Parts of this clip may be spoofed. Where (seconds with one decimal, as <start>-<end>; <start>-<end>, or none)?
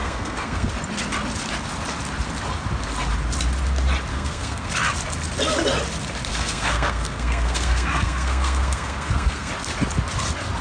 0.0-0.7; 4.1-4.7; 6.3-9.5